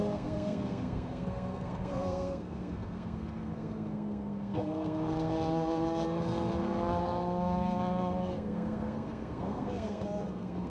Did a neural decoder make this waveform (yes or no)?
yes